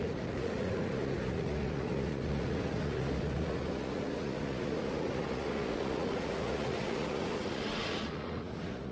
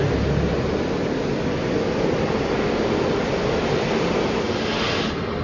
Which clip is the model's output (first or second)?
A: first